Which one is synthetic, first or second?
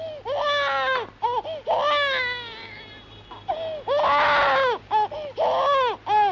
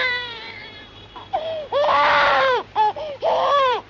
second